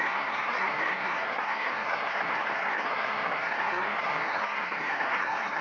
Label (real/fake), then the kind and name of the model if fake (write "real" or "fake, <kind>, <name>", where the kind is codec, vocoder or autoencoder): fake, codec, SNAC